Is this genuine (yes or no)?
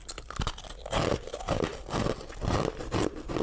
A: yes